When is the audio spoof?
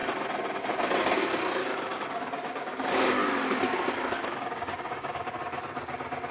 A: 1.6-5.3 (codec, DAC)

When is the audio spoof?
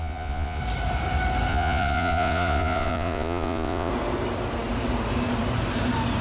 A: 0.0-0.6 (vocoder, Vocos); 1.5-3.9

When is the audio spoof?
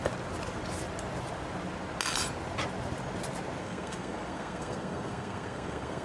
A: 3.6-6.0 (codec, SNAC)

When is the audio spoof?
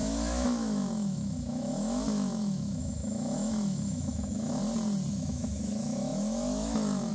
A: 0.0-4.6 (autoencoder, DAC-VAE); 5.1-7.1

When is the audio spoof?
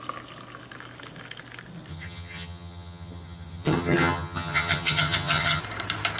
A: 1.9-5.6 (vocoder, HiFi-GAN)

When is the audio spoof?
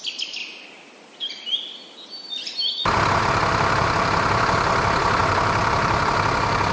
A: 0.4-3.2 (vocoder, BigVGAN v2); 5.2-6.1